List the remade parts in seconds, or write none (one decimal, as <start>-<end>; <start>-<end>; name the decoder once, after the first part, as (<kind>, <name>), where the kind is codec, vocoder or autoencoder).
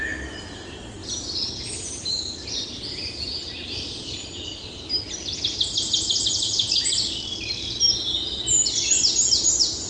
none